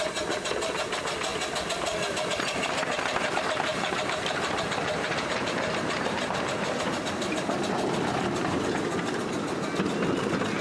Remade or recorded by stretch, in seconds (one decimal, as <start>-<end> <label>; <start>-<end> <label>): 0.0-3.7 recorded; 3.7-8.7 remade; 8.7-10.6 recorded